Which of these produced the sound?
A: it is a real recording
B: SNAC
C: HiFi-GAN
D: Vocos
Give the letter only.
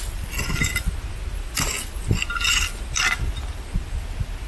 A